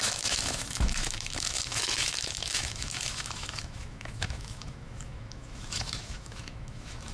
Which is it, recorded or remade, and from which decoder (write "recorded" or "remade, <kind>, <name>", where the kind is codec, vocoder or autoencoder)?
remade, autoencoder, DAC-VAE